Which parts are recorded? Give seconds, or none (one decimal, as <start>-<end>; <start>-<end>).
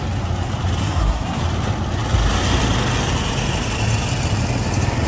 0.0-0.8; 1.4-5.1